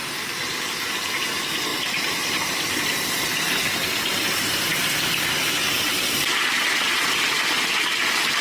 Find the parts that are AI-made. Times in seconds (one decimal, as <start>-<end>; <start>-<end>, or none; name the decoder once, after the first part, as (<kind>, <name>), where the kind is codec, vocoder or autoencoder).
0.0-4.7 (vocoder, BigVGAN v2); 5.8-8.4